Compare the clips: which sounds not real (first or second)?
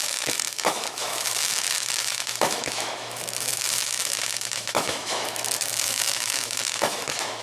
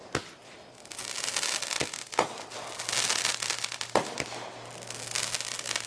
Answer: first